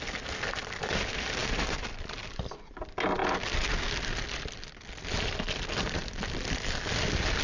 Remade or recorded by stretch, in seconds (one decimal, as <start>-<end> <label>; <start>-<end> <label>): 0.0-7.4 recorded

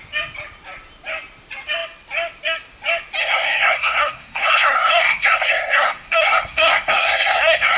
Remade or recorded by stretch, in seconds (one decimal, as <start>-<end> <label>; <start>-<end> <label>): 0.0-3.2 recorded; 3.2-7.8 remade

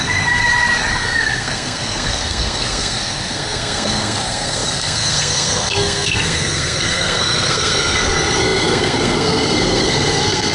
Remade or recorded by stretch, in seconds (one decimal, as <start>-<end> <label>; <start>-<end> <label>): 0.0-0.4 remade; 0.4-0.9 recorded; 0.9-10.5 remade

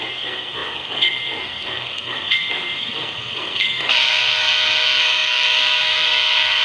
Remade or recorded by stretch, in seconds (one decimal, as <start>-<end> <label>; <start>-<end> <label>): 0.0-6.6 remade

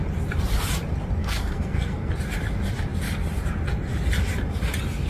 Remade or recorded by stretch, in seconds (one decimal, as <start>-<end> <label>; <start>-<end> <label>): 0.0-1.2 recorded; 1.2-2.1 remade; 2.1-5.1 recorded

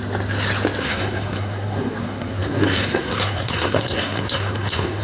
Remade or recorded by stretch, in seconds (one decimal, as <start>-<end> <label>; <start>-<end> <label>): 0.0-0.8 recorded; 0.8-5.0 remade